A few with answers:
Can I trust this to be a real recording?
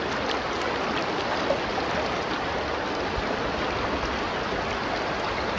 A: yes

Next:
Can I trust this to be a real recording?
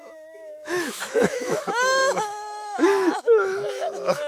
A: no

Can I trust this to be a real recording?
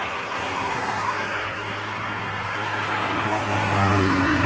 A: no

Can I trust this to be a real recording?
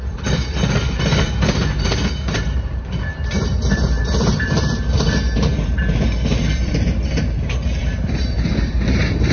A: no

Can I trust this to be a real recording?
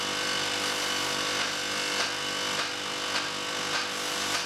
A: yes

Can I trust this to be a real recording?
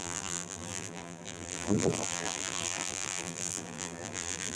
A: no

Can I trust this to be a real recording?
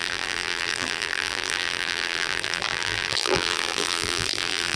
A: no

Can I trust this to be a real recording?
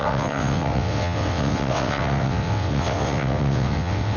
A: no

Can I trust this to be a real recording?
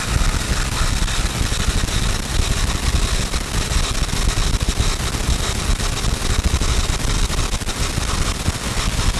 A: yes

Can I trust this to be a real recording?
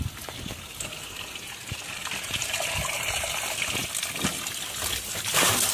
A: yes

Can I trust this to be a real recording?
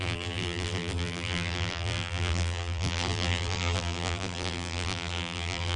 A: no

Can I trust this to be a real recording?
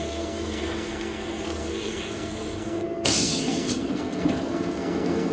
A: no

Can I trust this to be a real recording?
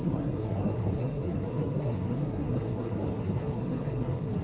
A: no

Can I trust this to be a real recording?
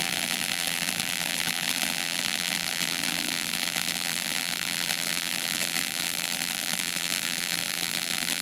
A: no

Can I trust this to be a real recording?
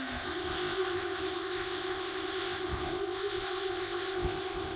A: no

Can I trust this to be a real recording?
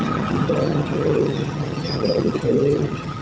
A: no